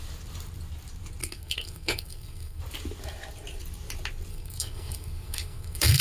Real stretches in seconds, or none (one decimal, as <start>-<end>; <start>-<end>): 0.0-1.2; 2.6-4.3